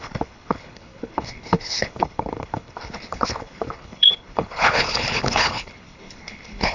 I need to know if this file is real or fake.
fake